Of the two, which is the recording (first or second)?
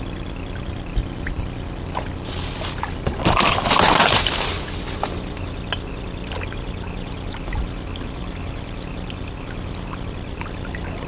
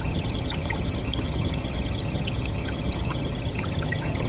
first